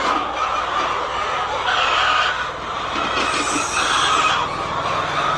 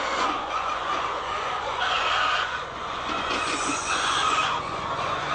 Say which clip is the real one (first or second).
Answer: first